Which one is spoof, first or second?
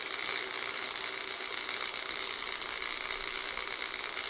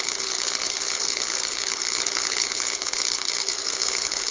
second